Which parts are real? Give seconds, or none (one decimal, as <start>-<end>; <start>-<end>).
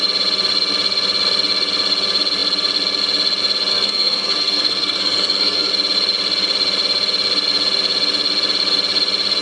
0.0-3.7; 5.7-9.4